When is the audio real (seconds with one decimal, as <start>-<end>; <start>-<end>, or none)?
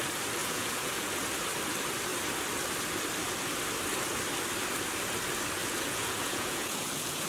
0.0-0.4; 1.2-5.6